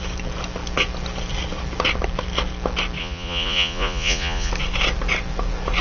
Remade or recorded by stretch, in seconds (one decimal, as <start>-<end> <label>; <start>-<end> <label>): 0.0-3.0 recorded; 3.0-4.5 remade; 4.5-5.8 recorded